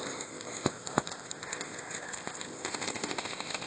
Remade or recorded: remade